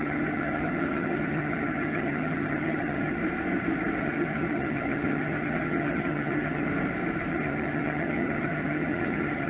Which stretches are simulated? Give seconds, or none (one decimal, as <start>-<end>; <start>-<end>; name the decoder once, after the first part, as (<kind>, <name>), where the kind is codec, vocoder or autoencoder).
0.0-3.2 (vocoder, HiFi-GAN); 4.0-6.7; 7.3-9.5